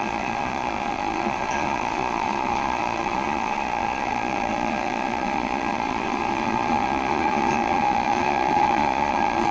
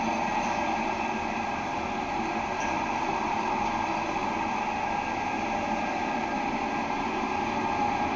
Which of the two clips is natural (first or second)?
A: second